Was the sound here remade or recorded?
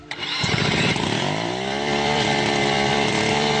remade